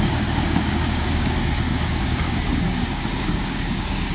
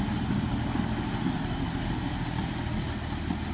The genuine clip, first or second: second